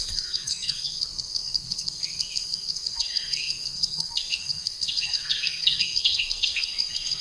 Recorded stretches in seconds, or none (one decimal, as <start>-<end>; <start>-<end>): none